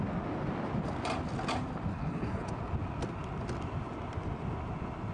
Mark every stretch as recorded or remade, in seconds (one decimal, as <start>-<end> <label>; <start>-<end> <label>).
0.0-1.9 recorded; 1.9-2.5 remade; 2.5-5.1 recorded